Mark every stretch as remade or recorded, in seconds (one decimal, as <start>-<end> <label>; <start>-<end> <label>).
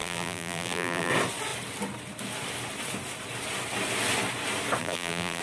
0.0-1.1 remade; 1.1-4.8 recorded; 4.8-5.4 remade